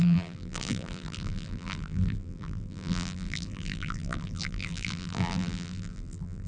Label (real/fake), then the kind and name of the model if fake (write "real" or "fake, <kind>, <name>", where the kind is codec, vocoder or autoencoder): fake, vocoder, BigVGAN v2